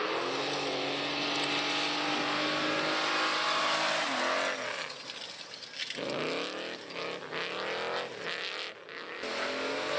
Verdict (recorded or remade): recorded